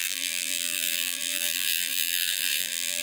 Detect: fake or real fake